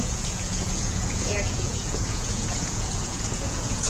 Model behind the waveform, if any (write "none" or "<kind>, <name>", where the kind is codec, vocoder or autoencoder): vocoder, Vocos